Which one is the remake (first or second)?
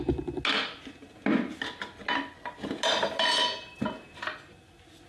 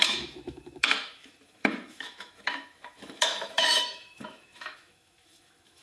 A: second